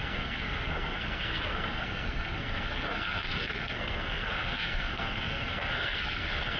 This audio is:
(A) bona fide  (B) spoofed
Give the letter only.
B